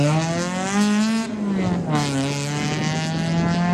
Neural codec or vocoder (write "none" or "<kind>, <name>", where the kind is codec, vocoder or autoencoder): none